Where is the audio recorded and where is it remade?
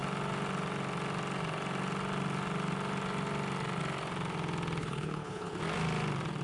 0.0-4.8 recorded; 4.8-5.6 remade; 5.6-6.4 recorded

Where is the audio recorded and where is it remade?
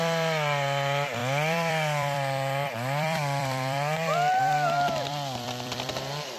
0.0-6.4 remade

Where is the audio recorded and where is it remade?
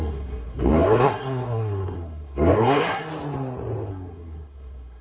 0.0-3.1 remade; 3.1-3.9 recorded; 3.9-5.0 remade